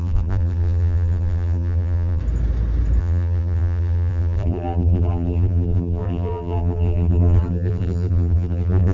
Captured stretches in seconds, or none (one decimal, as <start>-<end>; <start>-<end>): 2.2-3.0